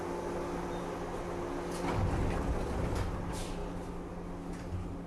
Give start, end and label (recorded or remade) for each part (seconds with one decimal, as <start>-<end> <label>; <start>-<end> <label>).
0.0-5.1 recorded